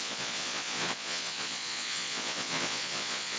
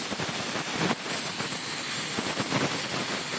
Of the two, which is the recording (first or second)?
second